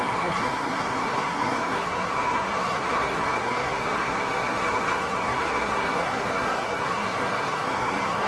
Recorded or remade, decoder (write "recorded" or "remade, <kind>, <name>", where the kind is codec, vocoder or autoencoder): remade, codec, SNAC